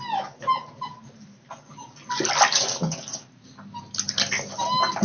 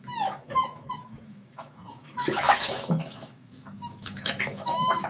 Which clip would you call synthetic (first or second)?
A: second